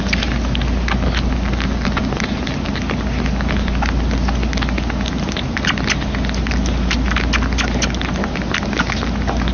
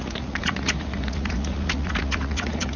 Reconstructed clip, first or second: second